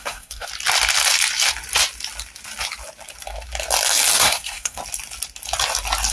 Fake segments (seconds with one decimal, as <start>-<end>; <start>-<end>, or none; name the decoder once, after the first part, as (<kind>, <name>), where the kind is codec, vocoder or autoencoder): 0.0-0.5 (codec, SNAC); 4.2-4.8